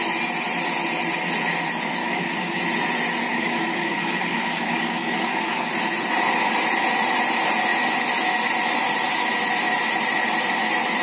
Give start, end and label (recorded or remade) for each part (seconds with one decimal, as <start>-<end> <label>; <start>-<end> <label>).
0.0-2.0 recorded; 2.0-2.6 remade; 2.6-3.3 recorded; 3.3-5.7 remade; 5.7-11.0 recorded